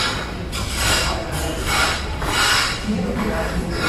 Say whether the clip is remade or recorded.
recorded